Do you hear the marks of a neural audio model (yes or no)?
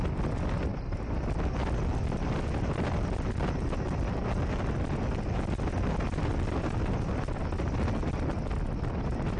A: no